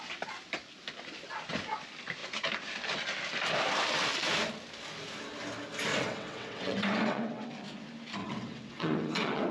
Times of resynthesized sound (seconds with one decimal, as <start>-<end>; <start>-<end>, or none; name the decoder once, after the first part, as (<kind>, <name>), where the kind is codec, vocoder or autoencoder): 5.9-7.5 (vocoder, WaveNeXt); 8.2-9.5